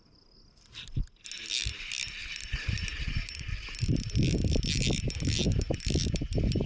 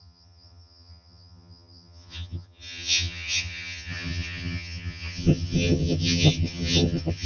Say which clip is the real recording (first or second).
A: first